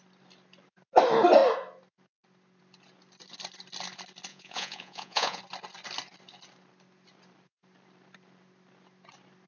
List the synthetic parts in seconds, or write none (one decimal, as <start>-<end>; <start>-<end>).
4.3-5.4